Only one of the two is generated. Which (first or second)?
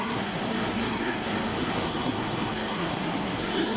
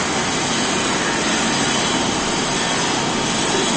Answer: first